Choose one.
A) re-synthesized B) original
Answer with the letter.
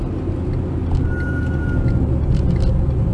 B